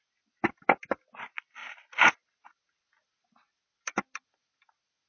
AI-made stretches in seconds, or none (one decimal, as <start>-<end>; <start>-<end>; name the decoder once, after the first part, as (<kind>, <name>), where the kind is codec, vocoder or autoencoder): none